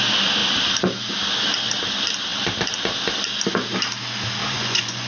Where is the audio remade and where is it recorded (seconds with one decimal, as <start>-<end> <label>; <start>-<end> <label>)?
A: 0.0-4.4 recorded; 4.4-5.1 remade